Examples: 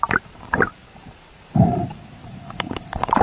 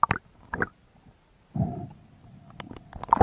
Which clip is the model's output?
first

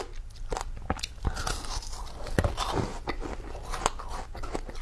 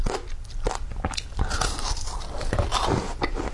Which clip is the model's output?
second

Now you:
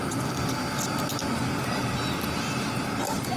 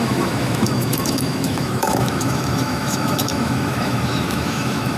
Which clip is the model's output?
second